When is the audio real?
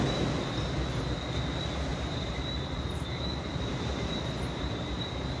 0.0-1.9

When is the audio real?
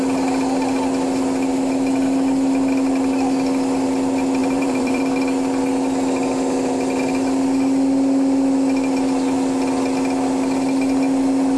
0.0-4.4; 5.0-11.6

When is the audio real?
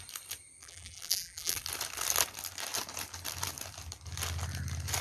0.0-0.6; 1.6-5.0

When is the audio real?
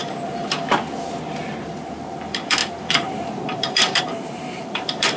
0.4-1.4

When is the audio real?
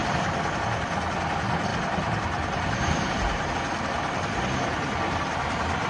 0.0-1.7; 3.5-5.9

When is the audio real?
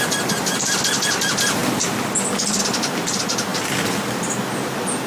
0.0-1.6; 2.6-3.5; 4.2-5.1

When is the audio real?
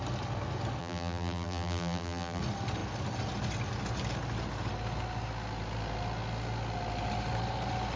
0.0-0.8; 2.4-8.0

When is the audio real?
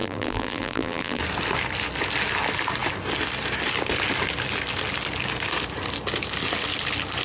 1.2-7.2